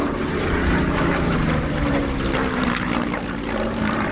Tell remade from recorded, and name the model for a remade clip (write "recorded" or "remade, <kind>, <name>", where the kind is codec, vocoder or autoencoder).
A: remade, vocoder, BigVGAN v2